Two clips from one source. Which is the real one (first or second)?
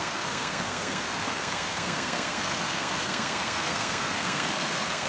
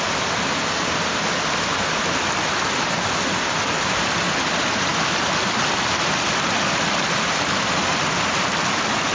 second